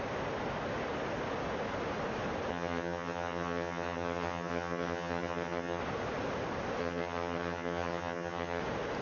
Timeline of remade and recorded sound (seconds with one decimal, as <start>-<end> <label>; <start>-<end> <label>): 0.0-2.5 recorded; 2.5-5.8 remade; 5.8-6.8 recorded; 6.8-8.6 remade; 8.6-9.0 recorded